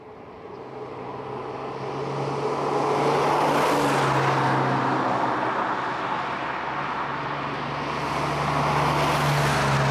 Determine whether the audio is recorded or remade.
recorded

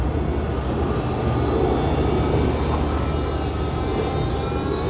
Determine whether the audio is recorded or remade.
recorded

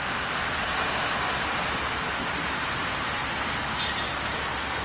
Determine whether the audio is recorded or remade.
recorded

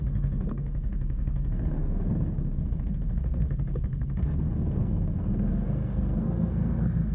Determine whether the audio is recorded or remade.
remade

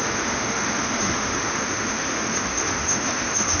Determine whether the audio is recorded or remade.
remade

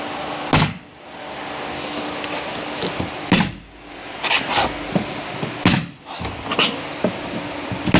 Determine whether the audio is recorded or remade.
recorded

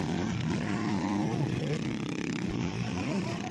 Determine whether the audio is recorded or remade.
remade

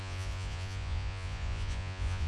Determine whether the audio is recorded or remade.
remade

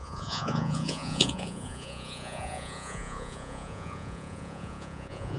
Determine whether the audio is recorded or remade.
remade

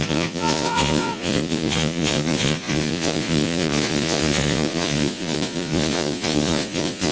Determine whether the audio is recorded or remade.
remade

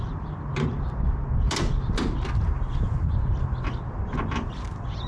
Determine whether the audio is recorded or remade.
recorded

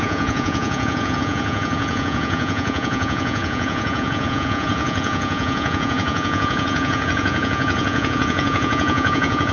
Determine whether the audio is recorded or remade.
remade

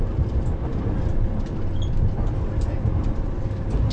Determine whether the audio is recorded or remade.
recorded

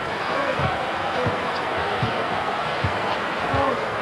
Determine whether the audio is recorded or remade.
remade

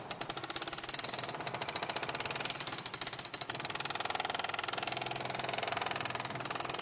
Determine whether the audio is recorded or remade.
recorded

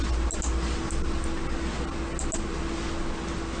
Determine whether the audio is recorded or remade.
recorded